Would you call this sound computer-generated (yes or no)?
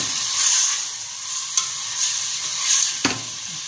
no